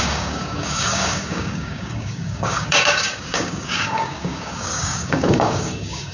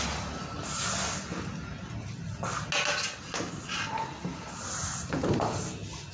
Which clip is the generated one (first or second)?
first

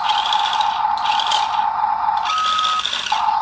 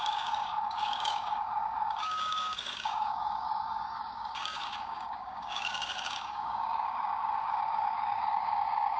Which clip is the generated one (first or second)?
second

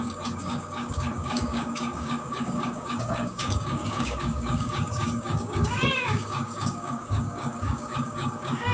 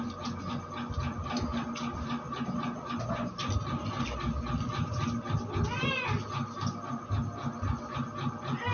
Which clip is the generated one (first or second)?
first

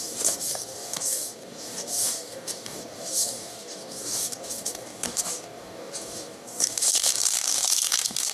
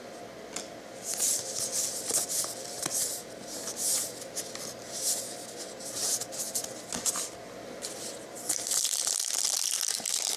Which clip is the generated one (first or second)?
first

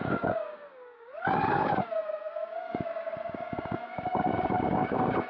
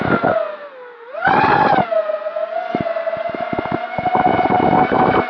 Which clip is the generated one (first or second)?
first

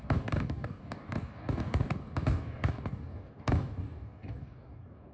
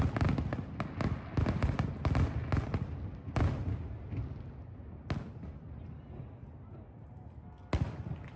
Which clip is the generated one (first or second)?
first